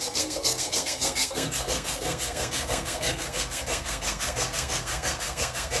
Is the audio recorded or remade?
remade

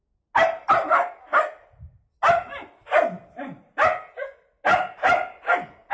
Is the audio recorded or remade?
recorded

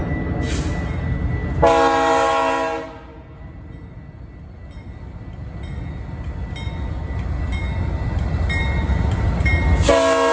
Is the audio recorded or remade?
recorded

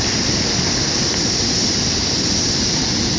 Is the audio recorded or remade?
recorded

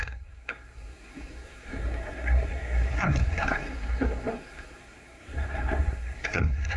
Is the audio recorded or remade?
remade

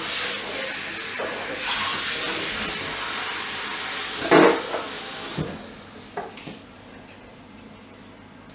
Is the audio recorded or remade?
recorded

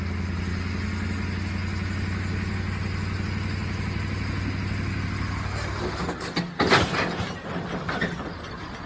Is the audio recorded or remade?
recorded